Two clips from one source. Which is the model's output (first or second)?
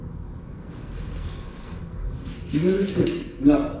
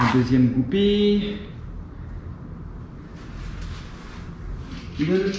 first